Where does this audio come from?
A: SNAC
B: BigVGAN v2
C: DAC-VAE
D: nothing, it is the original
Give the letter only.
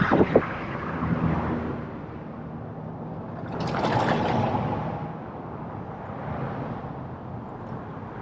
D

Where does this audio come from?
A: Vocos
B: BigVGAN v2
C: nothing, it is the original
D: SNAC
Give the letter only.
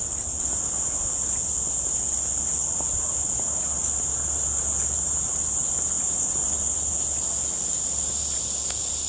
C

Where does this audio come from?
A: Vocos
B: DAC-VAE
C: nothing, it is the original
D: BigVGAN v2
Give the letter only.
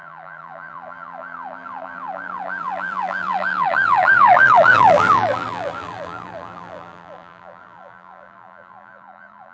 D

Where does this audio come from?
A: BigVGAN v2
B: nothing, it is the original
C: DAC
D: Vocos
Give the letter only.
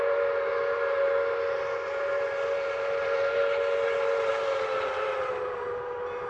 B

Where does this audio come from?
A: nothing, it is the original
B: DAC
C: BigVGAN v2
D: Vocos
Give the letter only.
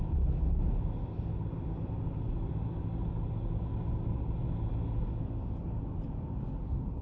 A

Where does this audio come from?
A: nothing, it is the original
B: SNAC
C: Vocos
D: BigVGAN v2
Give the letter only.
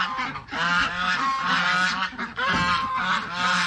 A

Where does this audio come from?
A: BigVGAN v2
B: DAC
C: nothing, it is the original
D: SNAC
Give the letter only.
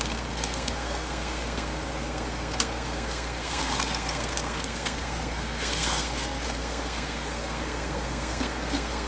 D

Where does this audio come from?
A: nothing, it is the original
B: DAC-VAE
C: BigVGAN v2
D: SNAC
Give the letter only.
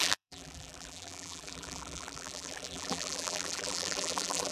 C